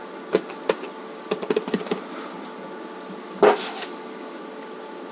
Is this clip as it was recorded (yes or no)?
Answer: yes